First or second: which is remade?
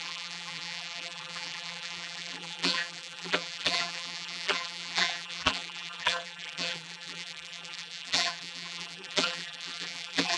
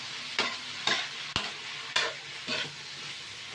first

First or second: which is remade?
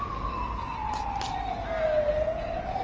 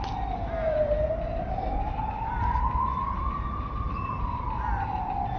second